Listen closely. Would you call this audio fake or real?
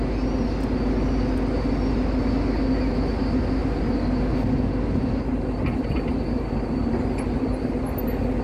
real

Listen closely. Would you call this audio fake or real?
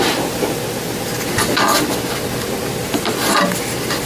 real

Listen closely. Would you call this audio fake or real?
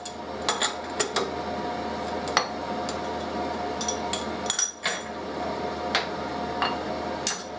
real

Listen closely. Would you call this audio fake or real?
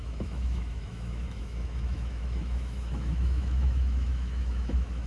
fake